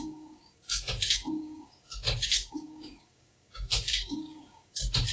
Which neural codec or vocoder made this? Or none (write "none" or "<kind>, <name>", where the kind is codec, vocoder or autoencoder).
codec, DAC